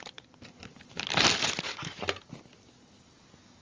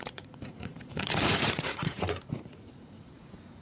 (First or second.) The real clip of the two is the first